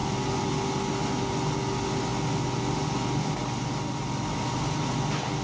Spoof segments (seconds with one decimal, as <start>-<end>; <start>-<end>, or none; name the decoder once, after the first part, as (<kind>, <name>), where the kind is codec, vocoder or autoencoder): none